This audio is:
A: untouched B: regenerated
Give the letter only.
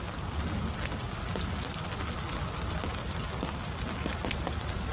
A